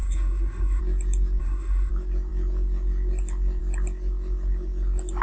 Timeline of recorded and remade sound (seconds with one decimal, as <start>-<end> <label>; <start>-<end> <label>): 0.0-0.8 remade; 0.8-1.4 recorded; 1.4-1.9 remade; 1.9-5.2 recorded